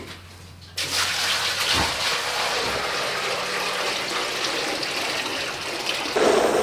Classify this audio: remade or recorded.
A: recorded